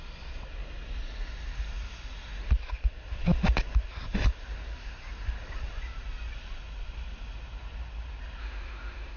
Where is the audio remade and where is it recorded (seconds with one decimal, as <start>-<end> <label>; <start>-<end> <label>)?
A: 0.0-8.4 recorded; 8.4-9.2 remade